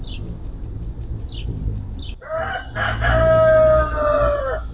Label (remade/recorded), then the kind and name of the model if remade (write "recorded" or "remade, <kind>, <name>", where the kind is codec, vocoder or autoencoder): recorded